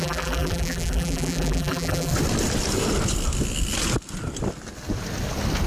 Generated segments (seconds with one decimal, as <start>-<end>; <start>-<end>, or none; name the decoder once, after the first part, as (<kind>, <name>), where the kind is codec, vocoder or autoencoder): 0.0-2.1 (vocoder, BigVGAN v2)